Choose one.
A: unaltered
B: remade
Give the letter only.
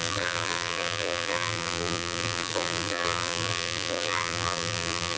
B